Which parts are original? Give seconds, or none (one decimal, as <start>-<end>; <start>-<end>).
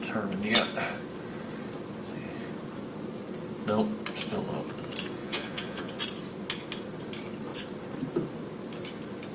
0.0-5.2; 6.0-9.3